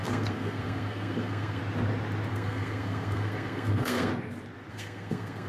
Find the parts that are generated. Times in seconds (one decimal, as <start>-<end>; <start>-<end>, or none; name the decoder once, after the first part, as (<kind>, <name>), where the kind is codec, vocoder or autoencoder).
0.0-1.6 (codec, SNAC); 2.3-4.1; 4.7-5.5